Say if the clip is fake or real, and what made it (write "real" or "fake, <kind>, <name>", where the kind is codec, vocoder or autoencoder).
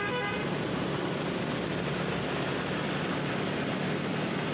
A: real